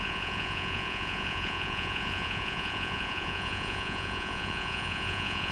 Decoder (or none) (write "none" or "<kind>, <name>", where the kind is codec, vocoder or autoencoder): vocoder, Vocos